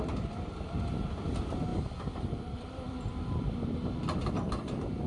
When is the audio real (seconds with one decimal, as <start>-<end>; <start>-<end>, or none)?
0.0-1.7; 4.2-5.1